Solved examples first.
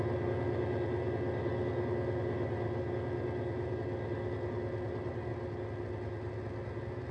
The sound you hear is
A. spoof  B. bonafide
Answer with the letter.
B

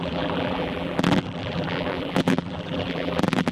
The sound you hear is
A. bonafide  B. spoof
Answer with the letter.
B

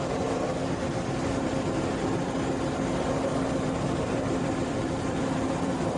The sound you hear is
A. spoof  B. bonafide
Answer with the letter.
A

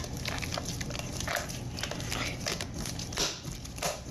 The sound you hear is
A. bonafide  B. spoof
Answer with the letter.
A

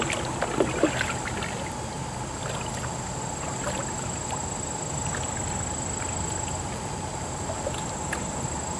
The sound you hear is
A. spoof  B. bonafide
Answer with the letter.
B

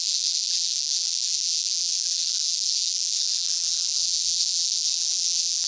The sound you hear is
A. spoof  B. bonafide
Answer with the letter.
A